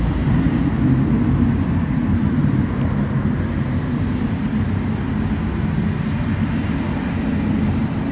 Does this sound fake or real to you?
real